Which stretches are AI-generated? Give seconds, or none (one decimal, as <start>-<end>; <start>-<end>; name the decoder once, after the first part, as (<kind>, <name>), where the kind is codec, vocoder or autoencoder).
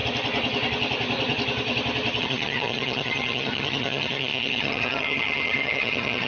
2.2-6.3 (vocoder, HiFi-GAN)